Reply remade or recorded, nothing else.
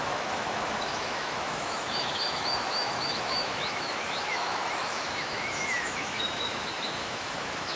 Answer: remade